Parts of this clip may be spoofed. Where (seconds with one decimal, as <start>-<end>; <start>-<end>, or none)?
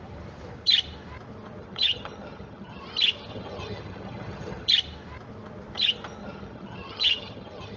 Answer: 1.6-2.8; 3.3-4.7; 6.2-7.8